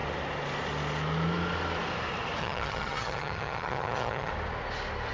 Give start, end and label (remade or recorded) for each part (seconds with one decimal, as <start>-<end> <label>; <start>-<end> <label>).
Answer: 0.0-2.4 recorded; 2.4-4.3 remade; 4.3-5.1 recorded